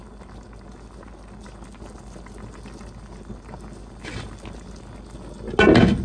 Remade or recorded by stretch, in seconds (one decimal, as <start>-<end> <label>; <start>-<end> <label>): 0.0-6.0 recorded